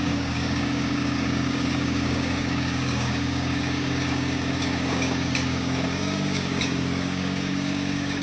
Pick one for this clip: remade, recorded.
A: remade